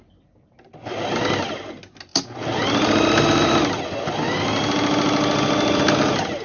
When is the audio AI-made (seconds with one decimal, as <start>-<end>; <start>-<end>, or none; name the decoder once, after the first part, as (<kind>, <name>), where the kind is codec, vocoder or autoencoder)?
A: none